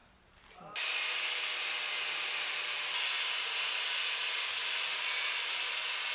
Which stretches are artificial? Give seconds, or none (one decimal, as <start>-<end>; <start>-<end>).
none